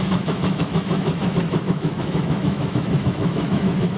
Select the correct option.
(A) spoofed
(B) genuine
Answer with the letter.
A